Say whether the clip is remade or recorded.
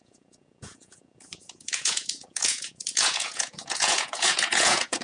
remade